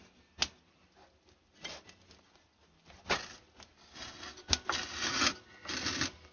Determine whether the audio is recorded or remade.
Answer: recorded